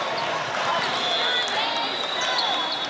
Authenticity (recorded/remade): recorded